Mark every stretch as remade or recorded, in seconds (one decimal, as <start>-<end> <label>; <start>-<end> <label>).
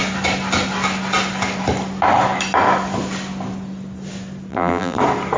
0.0-4.5 recorded; 4.5-5.0 remade; 5.0-5.4 recorded